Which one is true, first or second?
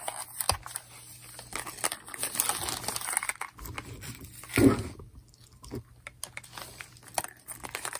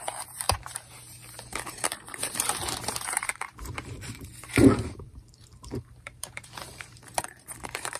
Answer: first